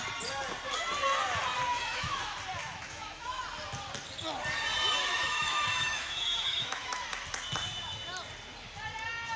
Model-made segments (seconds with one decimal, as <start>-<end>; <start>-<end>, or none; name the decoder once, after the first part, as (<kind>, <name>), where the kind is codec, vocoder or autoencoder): 1.7-2.2 (autoencoder, DAC-VAE); 2.6-3.4; 5.0-7.0